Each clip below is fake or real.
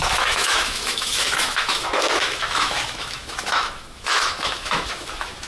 fake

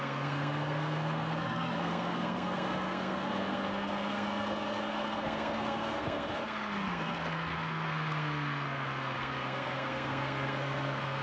fake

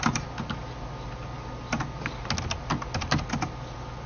real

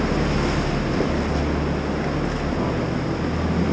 real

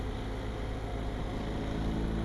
real